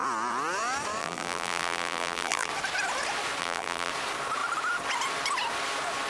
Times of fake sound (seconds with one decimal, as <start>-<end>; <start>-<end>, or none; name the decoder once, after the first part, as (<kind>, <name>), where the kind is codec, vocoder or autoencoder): 1.0-2.5 (vocoder, BigVGAN v2); 3.4-3.9